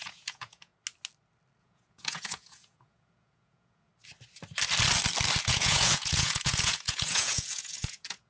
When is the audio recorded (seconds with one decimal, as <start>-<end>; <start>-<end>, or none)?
0.7-1.6; 3.9-5.4